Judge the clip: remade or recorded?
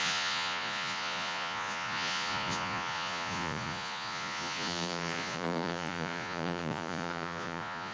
remade